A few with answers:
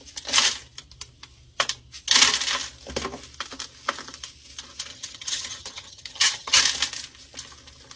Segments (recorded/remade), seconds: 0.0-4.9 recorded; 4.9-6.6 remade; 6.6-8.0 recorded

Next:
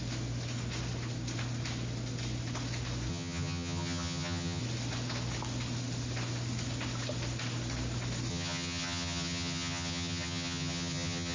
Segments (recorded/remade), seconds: 0.0-3.1 recorded; 3.1-4.6 remade; 4.6-8.3 recorded; 8.3-11.3 remade

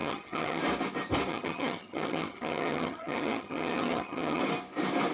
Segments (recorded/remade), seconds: 0.0-0.6 remade; 0.6-1.3 recorded; 1.3-4.4 remade; 4.4-5.1 recorded

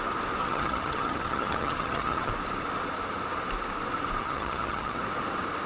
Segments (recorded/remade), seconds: 0.0-0.4 recorded; 0.4-2.3 remade; 2.3-4.2 recorded; 4.2-5.0 remade; 5.0-5.7 recorded

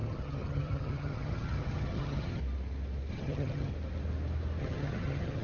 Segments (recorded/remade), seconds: 0.0-2.4 remade; 2.4-3.1 recorded; 3.1-3.7 remade; 3.7-4.6 recorded; 4.6-5.4 remade

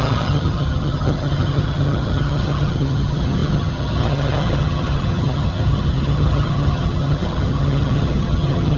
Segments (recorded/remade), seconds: 0.0-8.8 remade